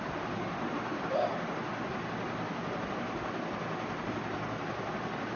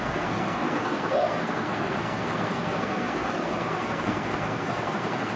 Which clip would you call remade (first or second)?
second